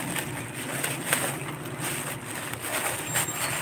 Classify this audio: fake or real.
real